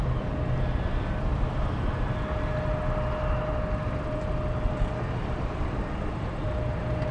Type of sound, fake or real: real